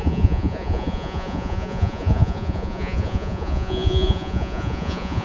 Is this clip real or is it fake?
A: fake